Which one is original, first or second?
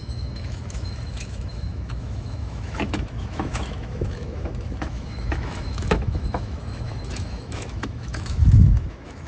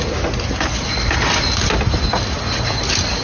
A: second